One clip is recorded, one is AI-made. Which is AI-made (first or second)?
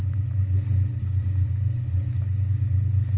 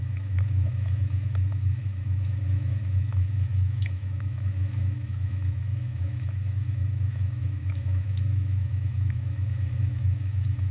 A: second